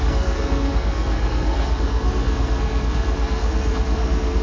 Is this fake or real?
fake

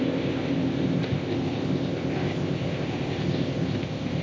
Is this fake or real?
fake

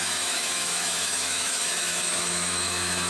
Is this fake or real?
fake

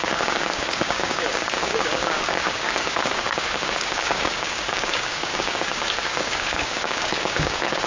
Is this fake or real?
fake